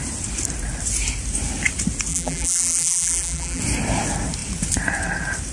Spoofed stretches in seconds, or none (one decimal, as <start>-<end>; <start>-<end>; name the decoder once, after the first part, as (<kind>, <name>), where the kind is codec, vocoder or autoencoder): 2.1-3.6 (vocoder, BigVGAN v2)